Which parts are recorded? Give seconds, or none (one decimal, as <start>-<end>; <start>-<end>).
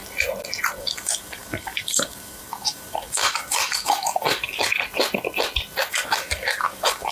0.0-0.8; 4.7-5.9